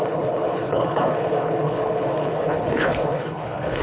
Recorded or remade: remade